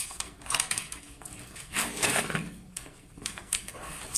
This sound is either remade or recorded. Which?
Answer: remade